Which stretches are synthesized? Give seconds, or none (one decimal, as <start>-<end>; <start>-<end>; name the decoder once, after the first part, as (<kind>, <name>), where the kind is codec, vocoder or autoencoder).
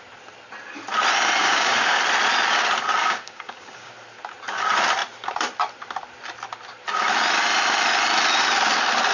1.4-2.0 (codec, DAC); 3.0-3.9